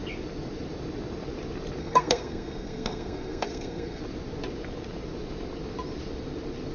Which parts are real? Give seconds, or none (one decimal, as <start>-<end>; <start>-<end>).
0.0-1.8; 4.0-6.7